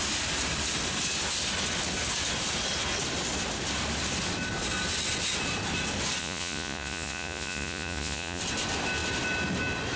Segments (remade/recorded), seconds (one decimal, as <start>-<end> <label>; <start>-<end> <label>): 0.0-6.2 recorded; 6.2-8.4 remade; 8.4-10.0 recorded